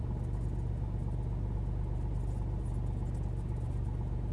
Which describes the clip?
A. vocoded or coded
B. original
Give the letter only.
B